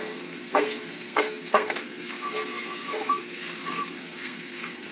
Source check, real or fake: fake